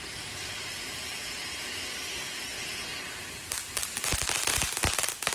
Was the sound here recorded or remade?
recorded